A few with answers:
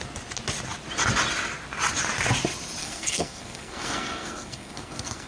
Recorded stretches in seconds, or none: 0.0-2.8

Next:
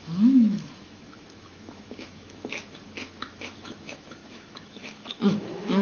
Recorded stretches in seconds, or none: none

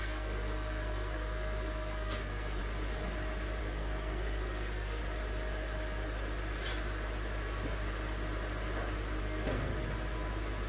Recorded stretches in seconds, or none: 2.6-3.6; 5.0-9.2; 9.7-10.7

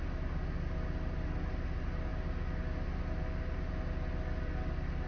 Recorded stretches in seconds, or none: 0.0-5.1

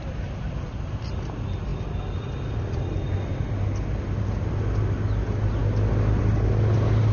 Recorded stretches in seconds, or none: 0.0-7.1

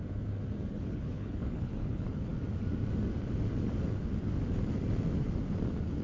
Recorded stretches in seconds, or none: 0.0-0.7; 2.3-6.0